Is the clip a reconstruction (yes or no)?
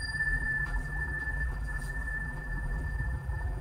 yes